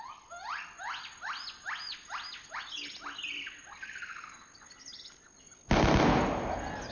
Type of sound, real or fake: real